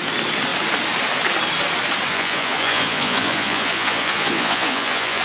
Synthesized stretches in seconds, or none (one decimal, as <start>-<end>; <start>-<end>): 2.1-5.2